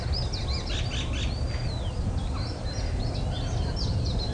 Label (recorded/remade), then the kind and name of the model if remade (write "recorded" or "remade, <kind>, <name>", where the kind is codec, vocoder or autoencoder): recorded